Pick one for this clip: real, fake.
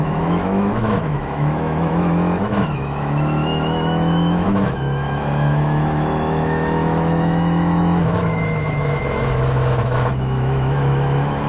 fake